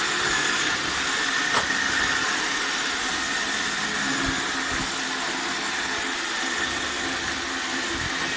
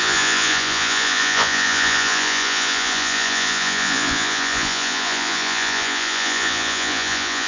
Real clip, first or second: first